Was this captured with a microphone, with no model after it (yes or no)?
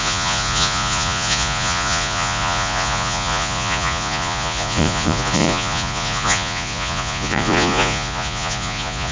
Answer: no